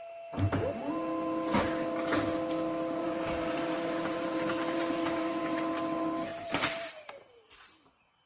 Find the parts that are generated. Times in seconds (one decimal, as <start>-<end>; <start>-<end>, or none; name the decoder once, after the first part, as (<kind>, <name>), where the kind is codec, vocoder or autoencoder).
3.0-5.4 (vocoder, BigVGAN v2); 6.3-8.3